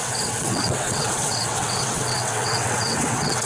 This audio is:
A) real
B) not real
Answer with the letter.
B